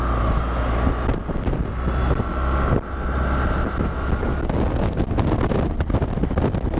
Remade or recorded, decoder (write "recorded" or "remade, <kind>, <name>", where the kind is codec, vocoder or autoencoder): recorded